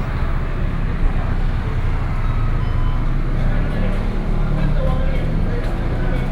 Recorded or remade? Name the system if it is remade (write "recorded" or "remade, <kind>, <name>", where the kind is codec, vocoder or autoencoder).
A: recorded